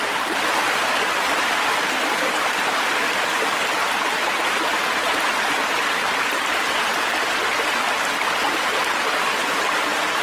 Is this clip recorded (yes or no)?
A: yes